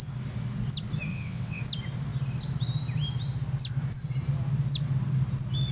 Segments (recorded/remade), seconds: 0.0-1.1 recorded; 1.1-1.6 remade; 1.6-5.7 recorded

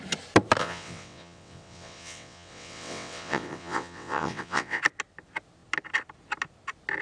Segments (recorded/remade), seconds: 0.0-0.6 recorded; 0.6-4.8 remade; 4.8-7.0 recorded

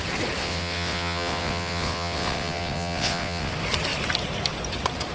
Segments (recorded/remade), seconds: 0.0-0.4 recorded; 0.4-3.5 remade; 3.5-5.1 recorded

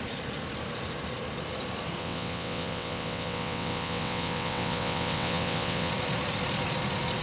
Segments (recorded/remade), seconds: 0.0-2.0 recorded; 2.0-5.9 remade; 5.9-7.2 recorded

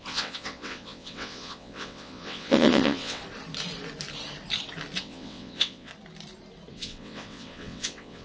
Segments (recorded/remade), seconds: 0.0-3.2 remade; 3.2-5.0 recorded; 5.0-5.9 remade; 5.9-6.7 recorded; 6.7-8.2 remade